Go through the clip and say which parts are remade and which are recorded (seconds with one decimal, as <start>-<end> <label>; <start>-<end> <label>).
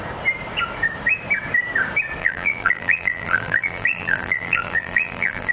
0.0-2.2 recorded; 2.2-5.5 remade